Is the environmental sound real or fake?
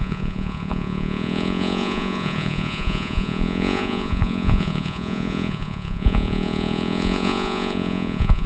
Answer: fake